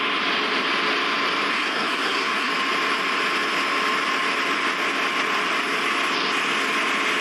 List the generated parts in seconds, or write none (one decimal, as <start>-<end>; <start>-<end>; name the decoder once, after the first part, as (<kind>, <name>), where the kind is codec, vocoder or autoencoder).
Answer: 1.5-2.5 (codec, SNAC)

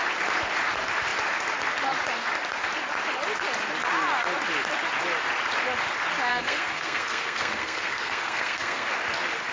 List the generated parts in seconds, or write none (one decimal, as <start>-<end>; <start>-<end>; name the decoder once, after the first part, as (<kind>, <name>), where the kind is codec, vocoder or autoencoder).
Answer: 6.3-8.9 (codec, SNAC)

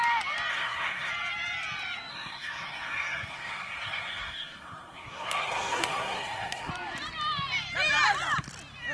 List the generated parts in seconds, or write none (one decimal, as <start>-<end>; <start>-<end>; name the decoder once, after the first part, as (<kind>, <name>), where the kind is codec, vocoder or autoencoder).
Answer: 0.5-1.1 (codec, SNAC); 2.1-6.7